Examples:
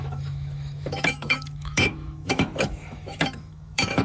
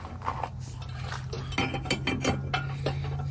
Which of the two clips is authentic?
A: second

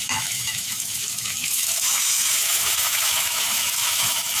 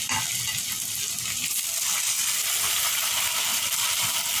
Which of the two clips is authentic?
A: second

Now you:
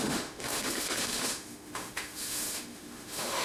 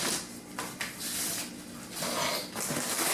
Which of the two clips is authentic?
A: second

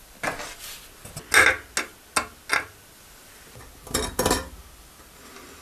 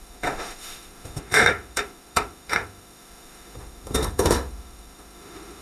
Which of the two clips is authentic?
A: first